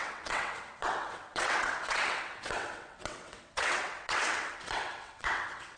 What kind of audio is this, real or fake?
fake